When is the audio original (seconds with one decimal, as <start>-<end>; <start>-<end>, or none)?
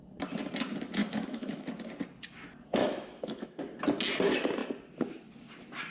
0.0-1.0; 1.7-2.8; 3.6-5.9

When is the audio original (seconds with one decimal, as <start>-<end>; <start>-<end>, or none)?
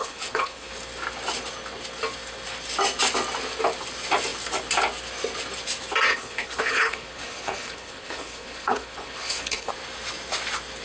0.7-6.1; 9.7-10.8